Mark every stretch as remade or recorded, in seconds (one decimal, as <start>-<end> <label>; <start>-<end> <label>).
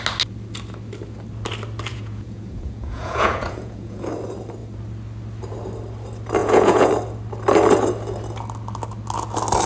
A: 0.0-1.9 recorded; 1.9-4.1 remade; 4.1-6.4 recorded; 6.4-6.9 remade; 6.9-9.7 recorded